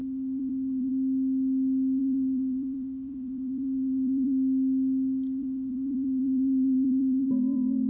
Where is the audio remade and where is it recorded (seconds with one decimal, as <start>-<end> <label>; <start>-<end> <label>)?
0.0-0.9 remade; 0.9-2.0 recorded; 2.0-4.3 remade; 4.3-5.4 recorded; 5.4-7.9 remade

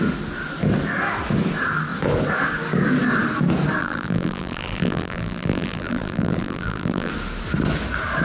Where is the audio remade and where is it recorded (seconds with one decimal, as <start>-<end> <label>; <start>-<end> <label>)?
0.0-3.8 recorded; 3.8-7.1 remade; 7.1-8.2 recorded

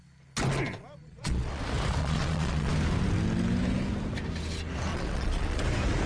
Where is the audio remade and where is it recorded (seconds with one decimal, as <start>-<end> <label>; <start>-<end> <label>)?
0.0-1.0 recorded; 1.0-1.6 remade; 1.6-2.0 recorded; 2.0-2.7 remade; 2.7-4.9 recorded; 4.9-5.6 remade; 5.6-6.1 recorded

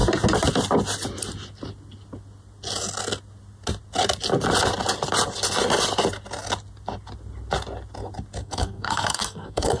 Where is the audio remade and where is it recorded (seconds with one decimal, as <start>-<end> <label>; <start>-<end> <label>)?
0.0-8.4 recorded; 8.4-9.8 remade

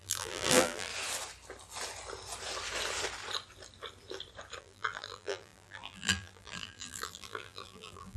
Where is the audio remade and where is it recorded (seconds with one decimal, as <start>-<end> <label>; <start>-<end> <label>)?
0.0-0.9 remade; 0.9-4.6 recorded; 4.6-8.2 remade

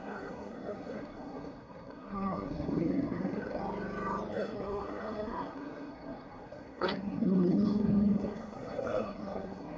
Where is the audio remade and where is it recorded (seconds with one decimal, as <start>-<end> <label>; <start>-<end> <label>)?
0.0-3.6 remade; 3.6-4.3 recorded; 4.3-9.8 remade

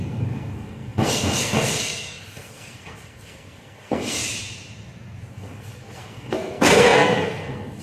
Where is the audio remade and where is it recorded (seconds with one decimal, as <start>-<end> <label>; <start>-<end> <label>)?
0.0-4.2 remade; 4.2-5.3 recorded; 5.3-7.8 remade

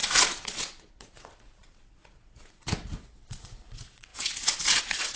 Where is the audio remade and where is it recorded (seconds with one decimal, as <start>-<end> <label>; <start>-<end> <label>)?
0.0-5.2 remade